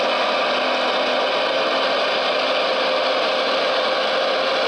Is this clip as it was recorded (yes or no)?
yes